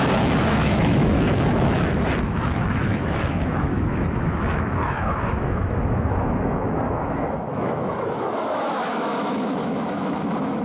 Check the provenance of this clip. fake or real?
fake